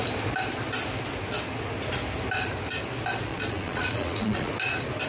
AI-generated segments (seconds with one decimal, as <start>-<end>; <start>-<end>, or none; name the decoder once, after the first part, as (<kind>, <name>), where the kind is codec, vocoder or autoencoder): 3.3-4.5 (vocoder, Vocos)